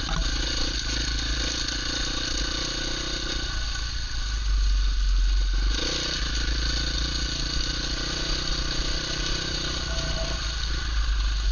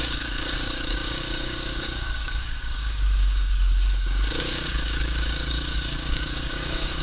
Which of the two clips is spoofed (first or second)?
second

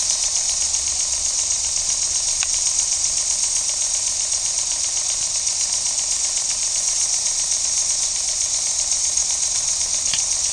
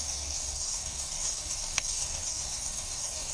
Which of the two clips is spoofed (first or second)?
second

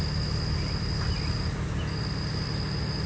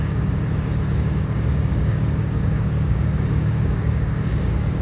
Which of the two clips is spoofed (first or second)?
second